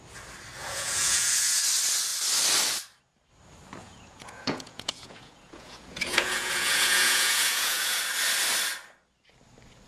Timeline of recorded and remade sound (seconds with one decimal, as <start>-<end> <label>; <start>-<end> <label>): 0.0-0.6 recorded; 0.6-1.6 remade; 1.6-3.8 recorded; 3.8-8.0 remade; 8.0-9.9 recorded